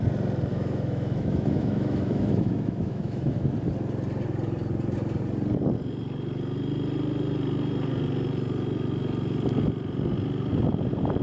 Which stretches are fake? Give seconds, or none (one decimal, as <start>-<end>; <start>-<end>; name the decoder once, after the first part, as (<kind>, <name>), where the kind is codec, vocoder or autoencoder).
0.5-3.5 (autoencoder, DAC-VAE)